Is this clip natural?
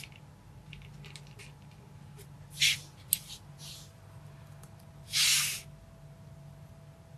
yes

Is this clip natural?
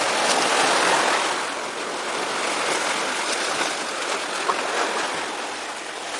yes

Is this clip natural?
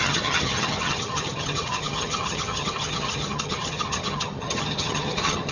no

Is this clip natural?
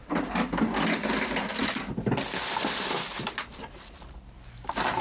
no